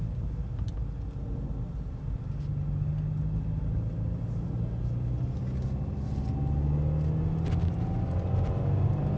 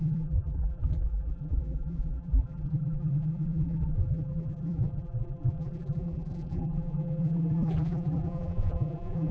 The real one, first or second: first